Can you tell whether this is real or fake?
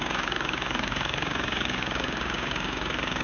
fake